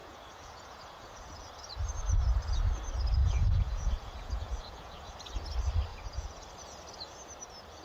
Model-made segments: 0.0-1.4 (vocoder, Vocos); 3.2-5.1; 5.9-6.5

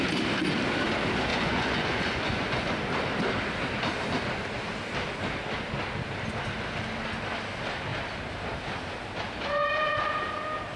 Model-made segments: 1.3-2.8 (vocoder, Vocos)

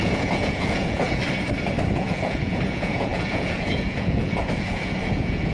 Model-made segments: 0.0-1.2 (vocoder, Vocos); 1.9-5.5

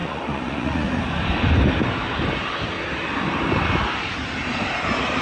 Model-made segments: 0.0-1.0 (vocoder, Vocos)

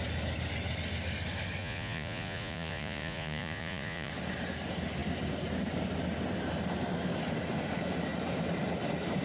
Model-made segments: 1.6-4.1 (vocoder, Vocos)

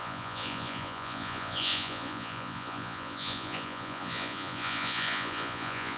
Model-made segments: 0.0-6.0 (vocoder, Vocos)

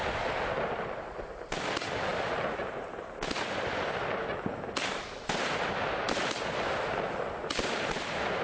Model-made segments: none